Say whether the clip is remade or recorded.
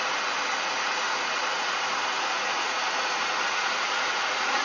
remade